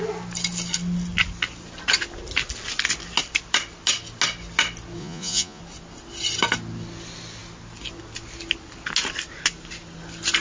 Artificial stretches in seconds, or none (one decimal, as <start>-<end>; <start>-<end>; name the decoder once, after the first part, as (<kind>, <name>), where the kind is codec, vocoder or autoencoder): 5.0-5.6 (vocoder, Vocos)